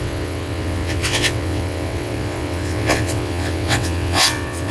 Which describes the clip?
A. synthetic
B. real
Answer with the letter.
A